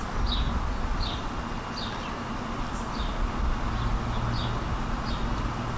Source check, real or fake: real